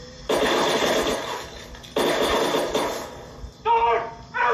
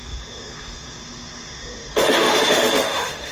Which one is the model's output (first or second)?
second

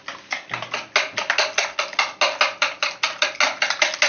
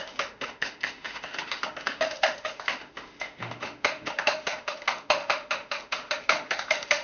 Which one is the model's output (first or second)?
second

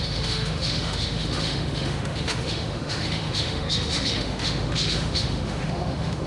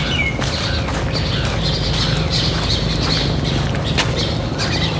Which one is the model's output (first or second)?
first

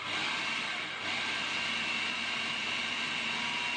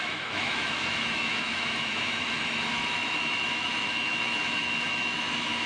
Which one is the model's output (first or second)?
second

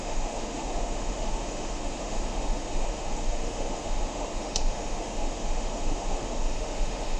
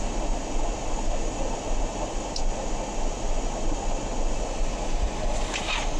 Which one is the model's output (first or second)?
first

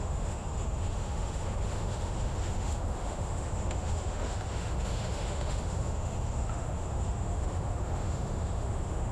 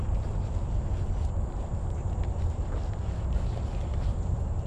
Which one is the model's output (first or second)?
first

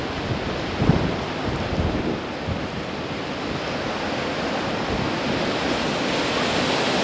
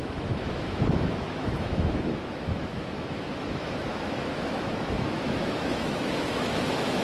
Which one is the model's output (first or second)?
second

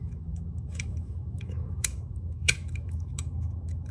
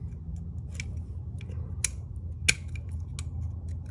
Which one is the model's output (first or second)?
first